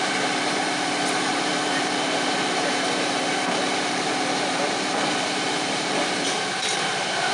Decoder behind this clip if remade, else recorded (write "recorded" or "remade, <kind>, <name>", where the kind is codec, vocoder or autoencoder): remade, vocoder, BigVGAN v2